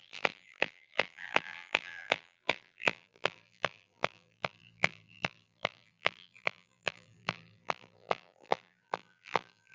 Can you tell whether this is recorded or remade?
remade